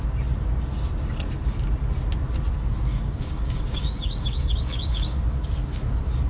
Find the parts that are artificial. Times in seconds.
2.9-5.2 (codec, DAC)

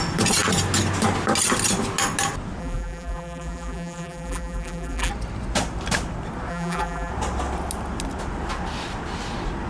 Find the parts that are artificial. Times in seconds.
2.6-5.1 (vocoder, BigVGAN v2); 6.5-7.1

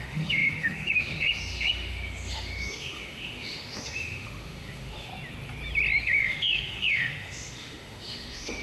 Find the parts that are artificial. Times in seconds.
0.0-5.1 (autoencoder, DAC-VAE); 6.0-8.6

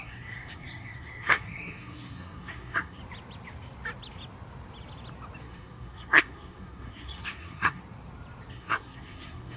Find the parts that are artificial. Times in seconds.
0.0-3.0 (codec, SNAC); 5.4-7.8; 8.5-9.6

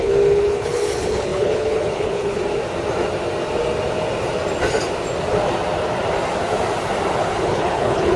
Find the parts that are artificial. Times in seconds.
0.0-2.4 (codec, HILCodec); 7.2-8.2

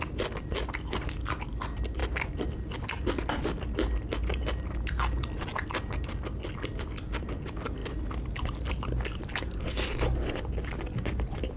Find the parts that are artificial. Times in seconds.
none

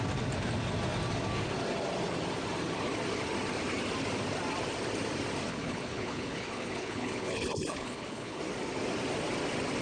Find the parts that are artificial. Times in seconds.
5.5-8.4 (codec, HILCodec)